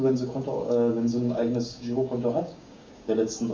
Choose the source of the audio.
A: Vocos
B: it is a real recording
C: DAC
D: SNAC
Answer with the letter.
C